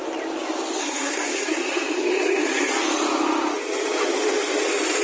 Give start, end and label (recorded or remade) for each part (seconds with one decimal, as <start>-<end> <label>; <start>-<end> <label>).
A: 0.0-0.8 recorded; 0.8-2.7 remade; 2.7-5.0 recorded